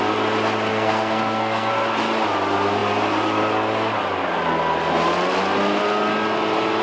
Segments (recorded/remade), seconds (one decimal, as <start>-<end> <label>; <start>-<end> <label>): 0.0-0.7 recorded; 0.7-1.7 remade; 1.7-6.8 recorded